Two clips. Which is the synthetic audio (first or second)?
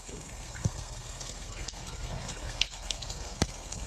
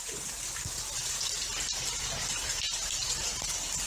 first